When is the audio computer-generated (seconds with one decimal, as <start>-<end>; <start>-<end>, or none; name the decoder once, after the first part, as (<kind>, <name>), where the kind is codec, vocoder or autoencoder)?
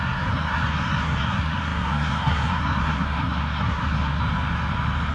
0.0-4.2 (codec, SNAC)